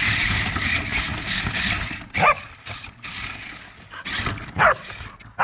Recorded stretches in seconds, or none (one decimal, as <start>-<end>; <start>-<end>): 0.0-5.4